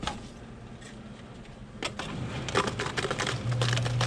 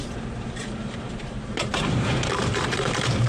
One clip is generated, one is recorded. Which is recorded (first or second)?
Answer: first